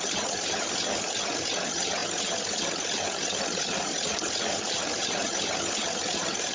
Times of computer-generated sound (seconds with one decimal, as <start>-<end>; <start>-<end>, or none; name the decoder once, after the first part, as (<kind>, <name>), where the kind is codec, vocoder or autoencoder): 0.0-6.5 (vocoder, HiFi-GAN)